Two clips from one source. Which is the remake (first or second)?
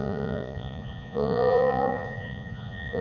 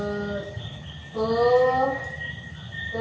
first